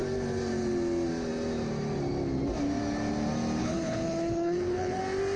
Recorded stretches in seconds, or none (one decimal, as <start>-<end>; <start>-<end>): 0.0-3.6; 5.0-5.4